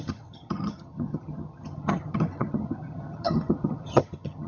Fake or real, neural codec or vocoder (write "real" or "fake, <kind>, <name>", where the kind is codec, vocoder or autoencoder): fake, vocoder, HiFi-GAN